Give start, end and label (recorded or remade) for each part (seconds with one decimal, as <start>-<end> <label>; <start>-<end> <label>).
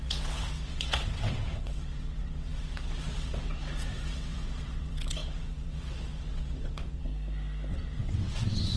0.0-7.1 remade; 7.1-7.7 recorded; 7.7-8.8 remade